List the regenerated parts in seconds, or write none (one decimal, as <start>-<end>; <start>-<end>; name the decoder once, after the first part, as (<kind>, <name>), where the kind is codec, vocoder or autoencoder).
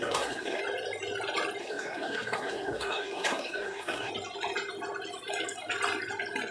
0.0-0.6 (codec, SNAC); 1.6-4.1